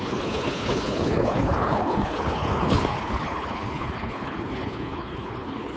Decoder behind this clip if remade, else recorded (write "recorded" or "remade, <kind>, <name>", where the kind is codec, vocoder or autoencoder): remade, codec, HILCodec